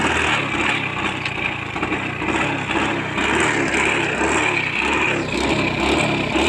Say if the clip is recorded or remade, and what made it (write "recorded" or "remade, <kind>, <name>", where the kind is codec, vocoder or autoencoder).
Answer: recorded